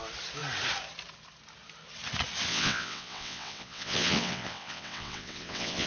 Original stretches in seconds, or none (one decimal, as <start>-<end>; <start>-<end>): 0.0-2.5